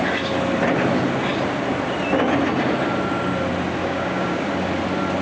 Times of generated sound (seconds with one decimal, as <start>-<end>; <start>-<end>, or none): 3.8-4.5